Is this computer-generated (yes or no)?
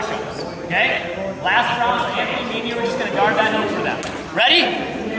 no